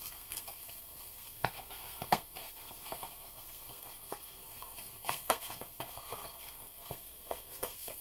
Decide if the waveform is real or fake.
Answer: fake